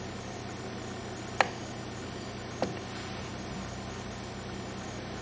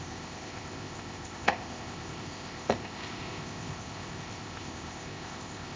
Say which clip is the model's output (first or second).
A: second